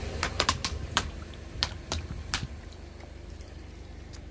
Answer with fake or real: fake